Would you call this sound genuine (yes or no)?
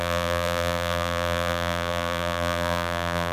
no